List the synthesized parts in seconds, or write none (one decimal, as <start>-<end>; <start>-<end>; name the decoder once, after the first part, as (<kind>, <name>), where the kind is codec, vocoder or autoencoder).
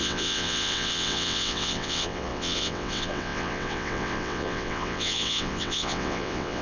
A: 0.0-6.6 (vocoder, WaveNeXt)